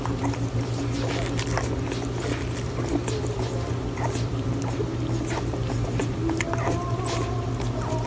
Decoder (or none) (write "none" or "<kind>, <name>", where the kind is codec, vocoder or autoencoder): none